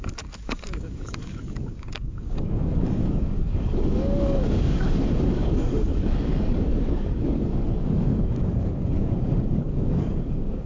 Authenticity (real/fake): fake